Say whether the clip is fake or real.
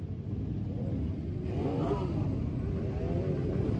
real